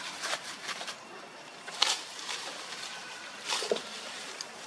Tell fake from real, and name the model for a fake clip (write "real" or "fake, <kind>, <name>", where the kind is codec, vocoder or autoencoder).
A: fake, vocoder, BigVGAN v2